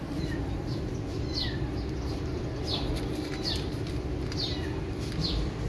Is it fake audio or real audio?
fake